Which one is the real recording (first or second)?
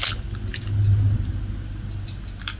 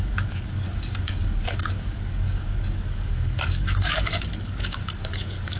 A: first